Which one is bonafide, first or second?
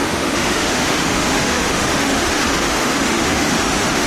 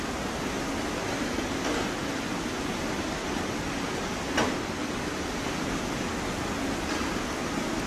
second